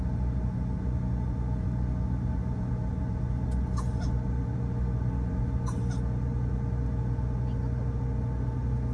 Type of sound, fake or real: real